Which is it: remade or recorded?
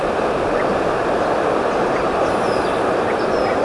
recorded